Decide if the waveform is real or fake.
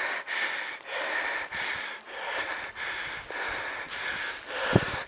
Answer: real